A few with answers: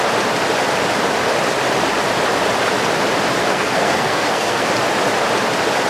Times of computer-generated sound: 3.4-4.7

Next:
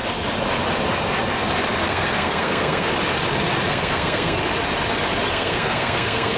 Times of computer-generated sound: 1.8-2.9; 3.7-4.4; 5.3-6.4